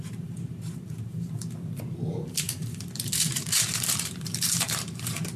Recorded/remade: remade